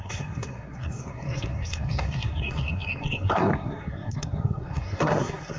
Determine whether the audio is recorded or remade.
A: remade